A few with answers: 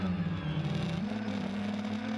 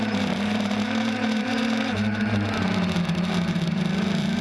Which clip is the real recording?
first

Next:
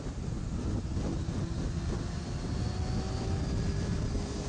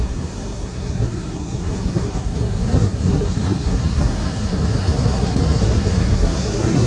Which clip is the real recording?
first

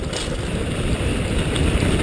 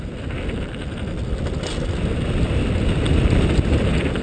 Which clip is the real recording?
second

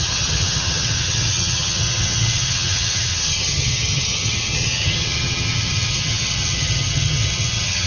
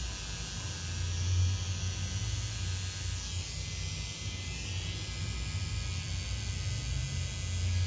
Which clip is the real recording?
second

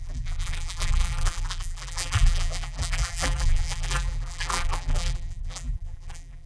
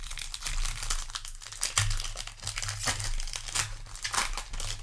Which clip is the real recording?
second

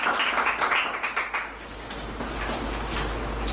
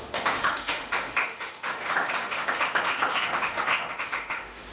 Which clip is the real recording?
first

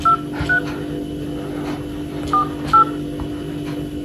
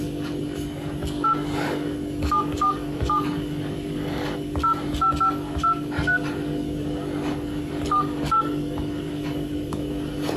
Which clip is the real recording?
first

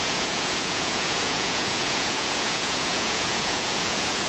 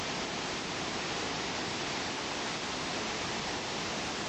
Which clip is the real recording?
second